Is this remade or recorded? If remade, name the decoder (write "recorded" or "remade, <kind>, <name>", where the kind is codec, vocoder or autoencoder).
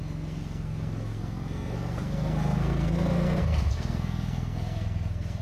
remade, codec, SNAC